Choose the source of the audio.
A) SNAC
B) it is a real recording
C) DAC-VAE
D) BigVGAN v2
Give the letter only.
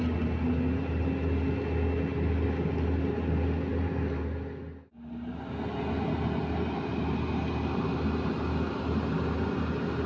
B